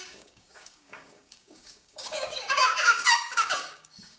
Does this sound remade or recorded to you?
remade